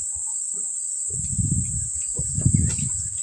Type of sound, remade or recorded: recorded